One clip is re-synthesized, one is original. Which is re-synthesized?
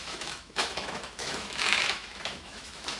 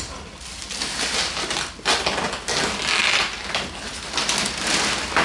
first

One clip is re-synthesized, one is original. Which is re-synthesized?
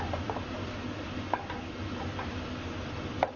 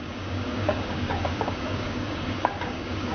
second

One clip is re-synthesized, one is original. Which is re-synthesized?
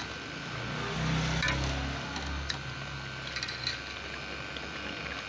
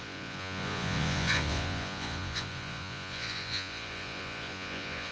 second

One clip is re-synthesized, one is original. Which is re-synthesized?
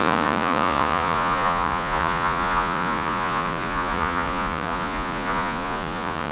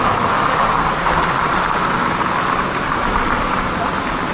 first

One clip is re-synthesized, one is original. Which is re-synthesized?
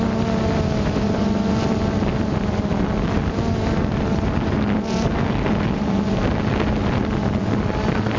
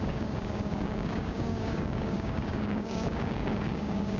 second